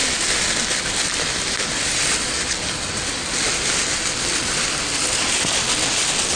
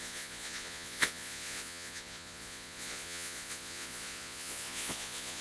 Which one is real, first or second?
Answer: first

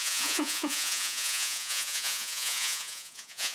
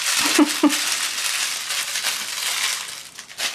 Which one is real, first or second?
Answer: second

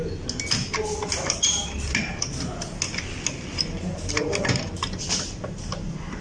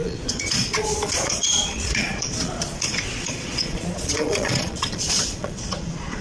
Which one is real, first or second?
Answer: first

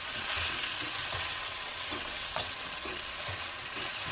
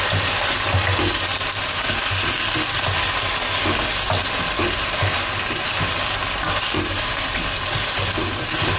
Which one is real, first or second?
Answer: second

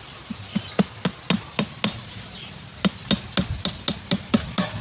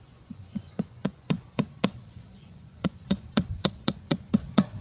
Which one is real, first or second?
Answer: first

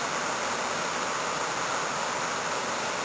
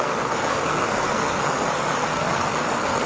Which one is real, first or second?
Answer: first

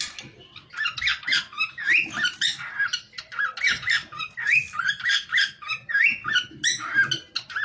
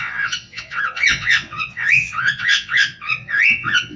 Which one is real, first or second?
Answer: first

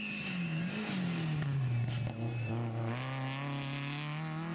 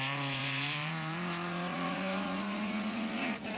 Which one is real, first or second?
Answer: first